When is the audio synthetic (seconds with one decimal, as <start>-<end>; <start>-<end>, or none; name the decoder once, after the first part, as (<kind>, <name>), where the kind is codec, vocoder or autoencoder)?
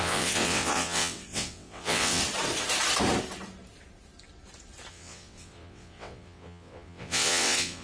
0.0-2.2 (vocoder, WaveNeXt); 4.9-7.8